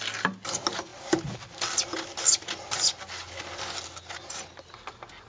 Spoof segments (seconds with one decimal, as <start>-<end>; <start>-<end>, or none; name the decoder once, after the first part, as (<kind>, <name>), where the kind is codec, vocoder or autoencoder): none